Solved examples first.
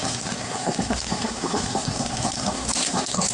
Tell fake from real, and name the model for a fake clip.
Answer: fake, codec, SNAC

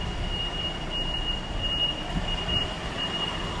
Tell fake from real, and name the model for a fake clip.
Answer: real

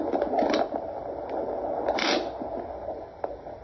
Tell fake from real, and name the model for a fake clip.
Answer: real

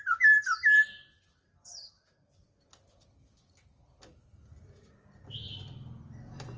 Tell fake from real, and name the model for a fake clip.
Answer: real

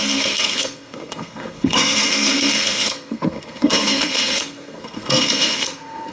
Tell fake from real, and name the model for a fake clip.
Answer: fake, codec, SNAC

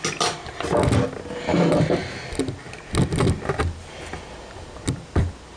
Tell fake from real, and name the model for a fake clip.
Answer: real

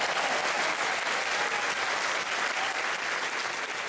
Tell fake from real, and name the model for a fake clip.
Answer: real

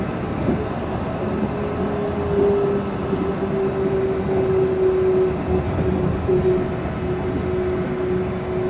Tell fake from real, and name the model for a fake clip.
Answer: real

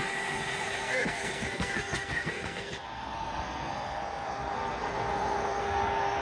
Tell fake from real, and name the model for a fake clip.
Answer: fake, codec, SNAC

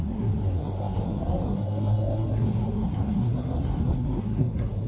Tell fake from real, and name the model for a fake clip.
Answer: fake, codec, SNAC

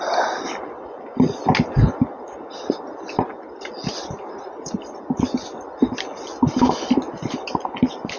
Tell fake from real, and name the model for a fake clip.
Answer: real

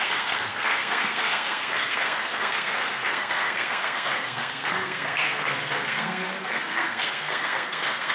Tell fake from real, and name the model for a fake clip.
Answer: fake, codec, SNAC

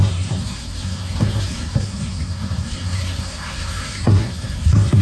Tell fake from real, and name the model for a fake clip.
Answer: fake, codec, SNAC